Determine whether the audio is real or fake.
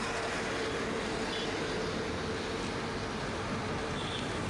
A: real